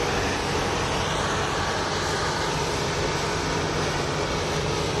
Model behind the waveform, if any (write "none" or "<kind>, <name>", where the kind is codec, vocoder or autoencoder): none